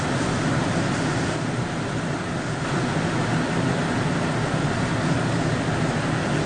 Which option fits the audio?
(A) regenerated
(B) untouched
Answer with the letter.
B